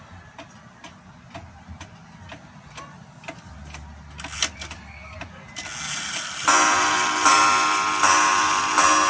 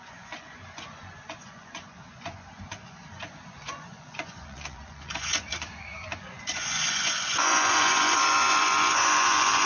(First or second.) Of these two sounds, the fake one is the second